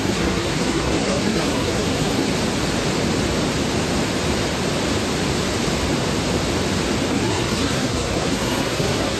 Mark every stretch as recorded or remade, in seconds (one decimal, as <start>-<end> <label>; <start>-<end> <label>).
0.0-2.3 remade; 2.3-7.1 recorded; 7.1-9.2 remade